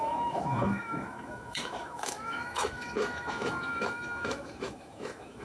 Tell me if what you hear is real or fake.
fake